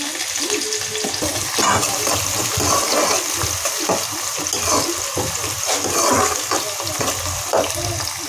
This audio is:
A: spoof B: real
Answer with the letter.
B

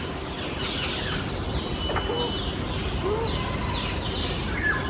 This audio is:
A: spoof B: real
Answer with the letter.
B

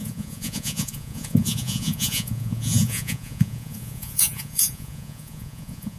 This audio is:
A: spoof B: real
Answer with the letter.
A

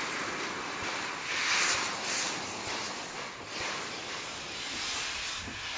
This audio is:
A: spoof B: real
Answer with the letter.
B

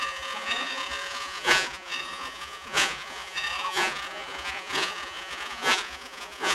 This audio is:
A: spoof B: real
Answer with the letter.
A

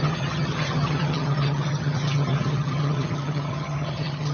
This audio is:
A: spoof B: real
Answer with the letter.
A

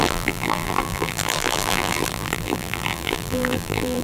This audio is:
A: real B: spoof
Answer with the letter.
B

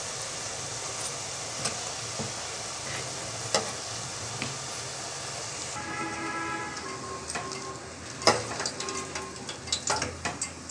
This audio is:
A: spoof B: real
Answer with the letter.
B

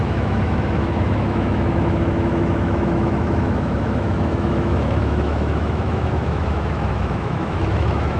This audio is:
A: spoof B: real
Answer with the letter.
A